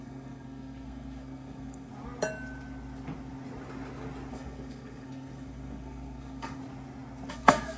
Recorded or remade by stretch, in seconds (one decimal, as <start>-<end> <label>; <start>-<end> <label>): 0.0-1.9 remade; 1.9-4.3 recorded; 4.3-6.6 remade; 6.6-7.3 recorded; 7.3-7.8 remade